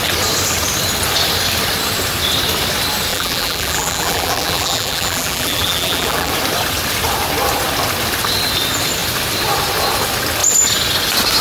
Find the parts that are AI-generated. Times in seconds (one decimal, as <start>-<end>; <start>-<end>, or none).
3.1-6.3